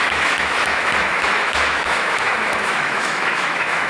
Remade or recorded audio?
remade